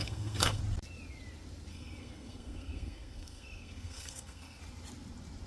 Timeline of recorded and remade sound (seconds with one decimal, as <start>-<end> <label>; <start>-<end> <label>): 0.0-0.6 remade; 0.6-1.7 recorded; 1.7-4.6 remade; 4.6-5.5 recorded